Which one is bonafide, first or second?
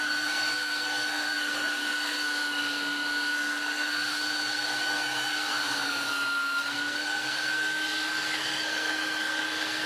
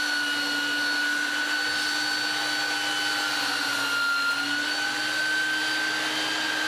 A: second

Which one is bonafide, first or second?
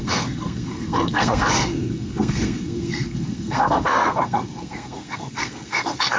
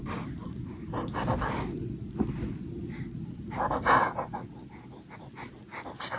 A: second